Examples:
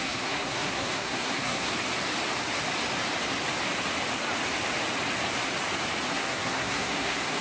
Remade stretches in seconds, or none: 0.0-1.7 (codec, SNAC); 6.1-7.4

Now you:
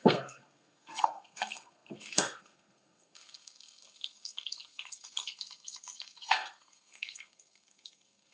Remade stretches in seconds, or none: 0.0-8.3 (codec, SNAC)

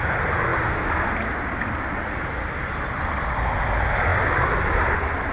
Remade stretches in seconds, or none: none

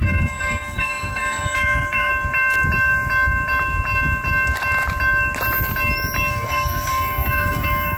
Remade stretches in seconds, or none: 0.0-2.1 (codec, SNAC); 6.3-8.0

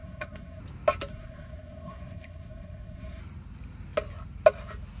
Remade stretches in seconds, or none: 0.0-0.6 (codec, SNAC); 1.1-3.2

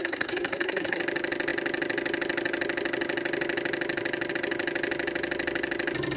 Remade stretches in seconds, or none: 0.0-1.0 (codec, SNAC)

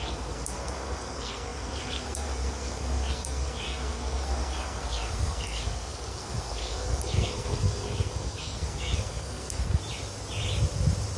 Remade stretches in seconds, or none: 0.0-9.8 (codec, SNAC)